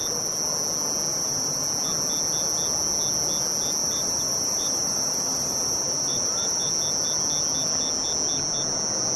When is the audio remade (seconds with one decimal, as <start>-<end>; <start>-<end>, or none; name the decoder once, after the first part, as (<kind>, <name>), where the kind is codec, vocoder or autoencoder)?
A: 1.1-1.6 (vocoder, BigVGAN v2); 3.8-6.7